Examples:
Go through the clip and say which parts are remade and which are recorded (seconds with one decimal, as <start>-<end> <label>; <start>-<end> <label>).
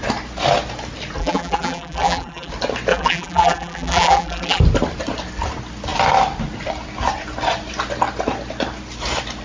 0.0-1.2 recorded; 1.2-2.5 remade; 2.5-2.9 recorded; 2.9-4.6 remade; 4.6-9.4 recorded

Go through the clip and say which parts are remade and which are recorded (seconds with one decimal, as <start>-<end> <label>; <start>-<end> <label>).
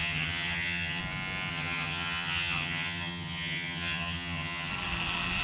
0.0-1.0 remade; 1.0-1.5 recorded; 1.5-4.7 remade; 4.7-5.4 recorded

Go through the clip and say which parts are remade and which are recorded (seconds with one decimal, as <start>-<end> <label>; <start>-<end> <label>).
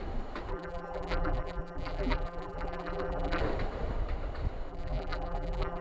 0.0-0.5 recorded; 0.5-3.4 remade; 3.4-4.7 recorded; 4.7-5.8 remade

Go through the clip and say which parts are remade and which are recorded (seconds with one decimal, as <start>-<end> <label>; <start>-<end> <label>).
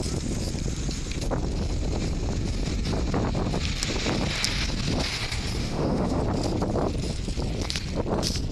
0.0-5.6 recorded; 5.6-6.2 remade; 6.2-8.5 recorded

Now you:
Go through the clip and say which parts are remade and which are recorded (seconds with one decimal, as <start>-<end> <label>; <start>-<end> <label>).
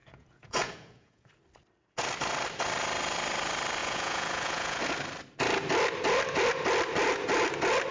0.0-1.3 remade; 1.3-3.8 recorded; 3.8-4.8 remade; 4.8-7.9 recorded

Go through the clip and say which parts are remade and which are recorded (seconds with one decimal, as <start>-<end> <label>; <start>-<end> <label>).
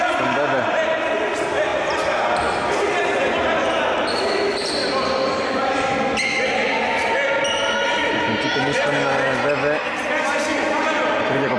0.0-11.6 recorded